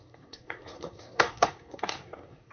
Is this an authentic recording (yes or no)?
no